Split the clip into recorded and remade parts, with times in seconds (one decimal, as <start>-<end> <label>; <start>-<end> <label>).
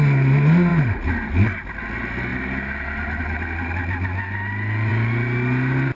0.0-5.9 recorded